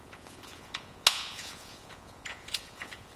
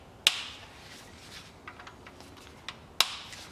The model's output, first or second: first